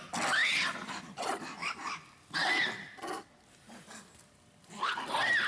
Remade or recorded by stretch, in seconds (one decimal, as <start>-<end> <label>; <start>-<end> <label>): 0.0-5.5 recorded